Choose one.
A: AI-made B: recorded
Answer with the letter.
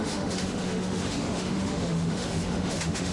A